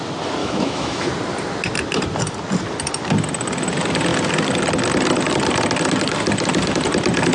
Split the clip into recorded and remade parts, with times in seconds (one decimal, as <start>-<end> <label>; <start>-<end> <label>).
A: 0.0-0.4 recorded; 0.4-1.1 remade; 1.1-7.3 recorded